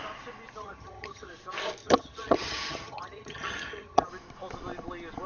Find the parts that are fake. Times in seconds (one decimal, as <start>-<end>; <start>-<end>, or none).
0.6-1.3; 1.8-4.1